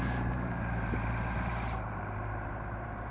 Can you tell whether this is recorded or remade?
remade